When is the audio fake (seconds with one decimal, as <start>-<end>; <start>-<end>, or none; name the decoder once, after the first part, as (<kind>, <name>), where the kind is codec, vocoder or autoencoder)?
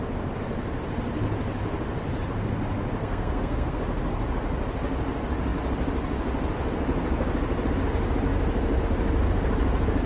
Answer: 3.0-3.8 (codec, SNAC)